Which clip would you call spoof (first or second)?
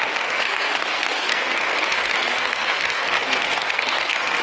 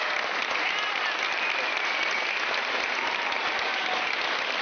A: first